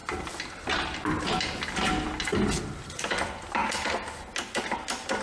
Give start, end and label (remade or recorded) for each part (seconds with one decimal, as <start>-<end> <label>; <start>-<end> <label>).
0.0-2.6 recorded; 2.6-3.6 remade; 3.6-4.7 recorded; 4.7-5.2 remade